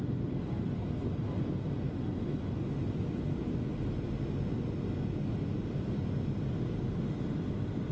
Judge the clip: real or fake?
real